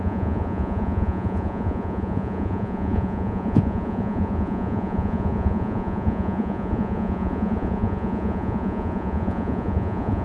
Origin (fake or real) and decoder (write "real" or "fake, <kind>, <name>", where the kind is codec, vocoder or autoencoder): fake, vocoder, Vocos